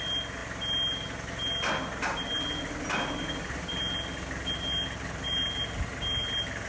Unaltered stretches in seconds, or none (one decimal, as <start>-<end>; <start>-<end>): 0.0-6.7